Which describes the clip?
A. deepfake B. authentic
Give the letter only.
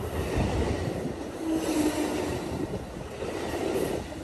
B